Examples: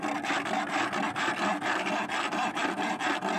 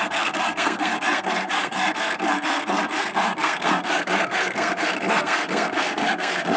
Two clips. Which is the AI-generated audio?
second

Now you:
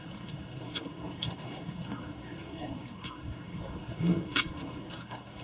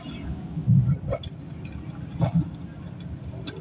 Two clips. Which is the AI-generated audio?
first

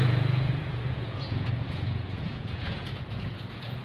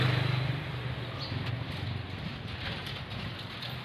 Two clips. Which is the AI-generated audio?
first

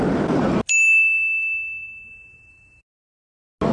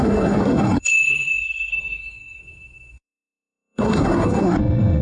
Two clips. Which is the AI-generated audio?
second